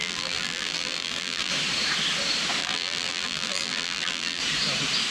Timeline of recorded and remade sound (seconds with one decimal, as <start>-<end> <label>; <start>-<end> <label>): 0.0-1.5 remade; 1.5-2.6 recorded; 2.6-4.4 remade; 4.4-5.1 recorded